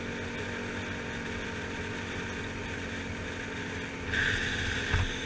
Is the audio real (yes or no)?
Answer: yes